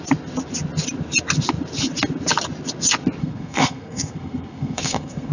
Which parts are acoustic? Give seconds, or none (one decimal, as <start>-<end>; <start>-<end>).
0.0-3.2